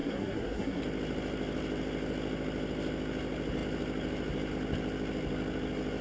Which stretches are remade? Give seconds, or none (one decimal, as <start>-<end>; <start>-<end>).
0.0-0.8